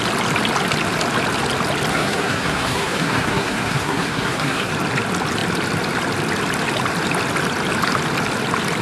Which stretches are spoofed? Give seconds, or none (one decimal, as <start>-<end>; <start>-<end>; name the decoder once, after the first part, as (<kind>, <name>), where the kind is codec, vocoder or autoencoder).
1.9-4.7 (codec, SNAC)